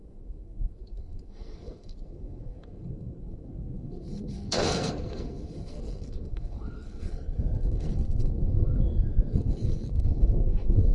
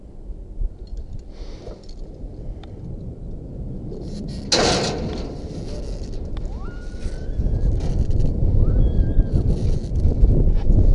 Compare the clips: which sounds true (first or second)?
second